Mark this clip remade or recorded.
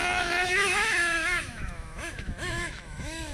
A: remade